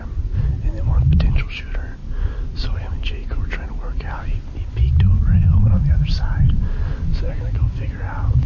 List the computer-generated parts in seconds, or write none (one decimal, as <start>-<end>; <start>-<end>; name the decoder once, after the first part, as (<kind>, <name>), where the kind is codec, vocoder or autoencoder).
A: 2.0-3.1 (vocoder, BigVGAN v2); 5.8-6.5